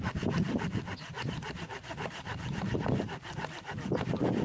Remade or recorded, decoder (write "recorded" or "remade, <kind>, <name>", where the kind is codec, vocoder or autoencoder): recorded